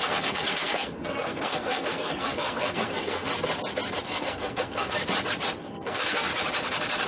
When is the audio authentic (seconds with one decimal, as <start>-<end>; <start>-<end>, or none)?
3.3-4.0; 5.0-5.6; 6.3-7.1